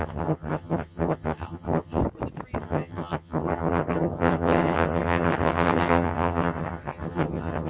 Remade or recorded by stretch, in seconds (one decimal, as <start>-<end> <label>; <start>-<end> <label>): 0.0-2.0 remade; 2.0-2.6 recorded; 2.6-7.7 remade